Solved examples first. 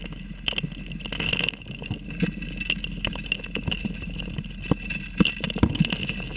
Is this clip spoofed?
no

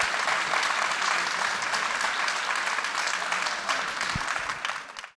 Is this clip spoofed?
no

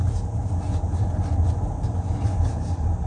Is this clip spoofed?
no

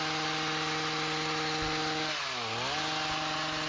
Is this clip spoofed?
no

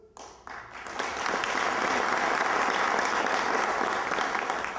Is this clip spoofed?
no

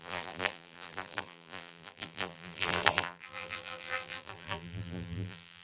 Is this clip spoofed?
yes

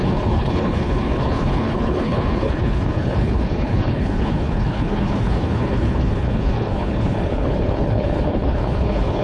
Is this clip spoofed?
yes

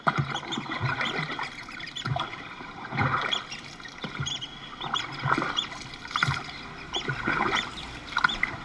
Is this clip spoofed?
no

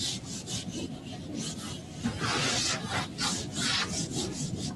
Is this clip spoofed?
no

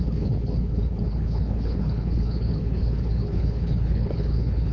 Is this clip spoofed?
yes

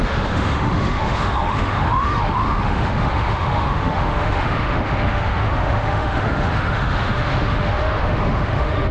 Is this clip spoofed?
yes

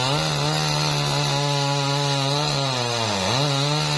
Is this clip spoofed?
no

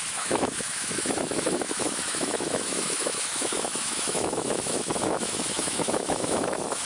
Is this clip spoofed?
yes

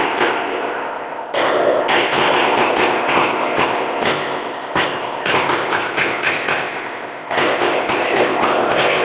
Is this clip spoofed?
yes